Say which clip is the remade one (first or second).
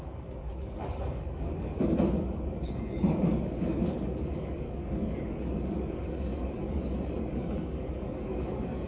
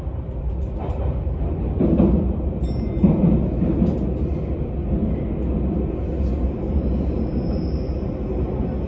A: first